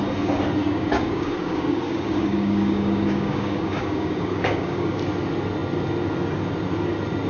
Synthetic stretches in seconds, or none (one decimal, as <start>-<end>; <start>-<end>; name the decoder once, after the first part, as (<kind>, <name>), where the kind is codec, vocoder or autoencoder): 0.6-5.0 (codec, DAC)